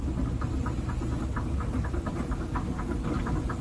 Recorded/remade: recorded